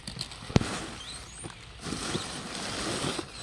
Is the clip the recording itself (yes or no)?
yes